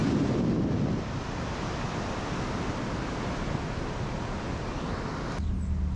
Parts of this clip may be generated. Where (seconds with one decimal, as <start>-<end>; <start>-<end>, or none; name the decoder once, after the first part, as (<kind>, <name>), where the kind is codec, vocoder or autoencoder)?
none